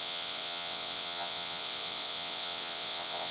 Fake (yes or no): yes